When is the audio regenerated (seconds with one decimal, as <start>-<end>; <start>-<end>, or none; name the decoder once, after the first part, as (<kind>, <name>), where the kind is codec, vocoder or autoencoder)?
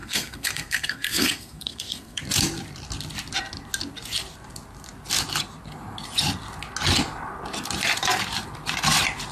0.0-2.2 (codec, SNAC)